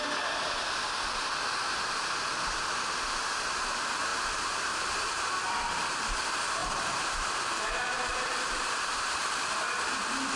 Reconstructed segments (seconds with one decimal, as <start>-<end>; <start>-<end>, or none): 4.1-5.4; 6.6-7.4; 8.1-9.2